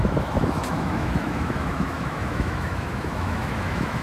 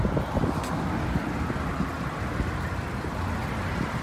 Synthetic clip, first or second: first